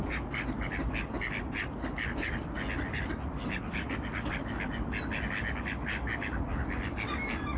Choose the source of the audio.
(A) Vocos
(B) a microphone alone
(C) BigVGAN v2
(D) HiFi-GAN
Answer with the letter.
B